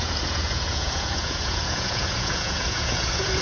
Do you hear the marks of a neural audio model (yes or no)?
yes